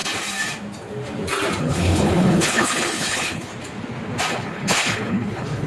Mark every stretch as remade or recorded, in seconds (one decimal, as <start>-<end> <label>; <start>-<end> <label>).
0.0-1.6 recorded; 1.6-3.5 remade; 3.5-4.3 recorded; 4.3-5.7 remade